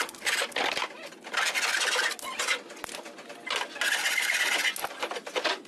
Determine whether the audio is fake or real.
real